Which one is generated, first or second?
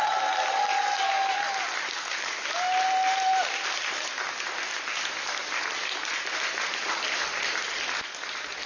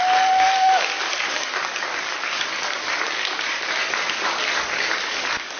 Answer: second